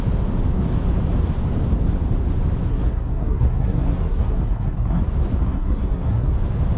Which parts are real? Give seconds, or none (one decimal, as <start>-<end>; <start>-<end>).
0.0-2.7; 5.0-5.4; 6.3-6.8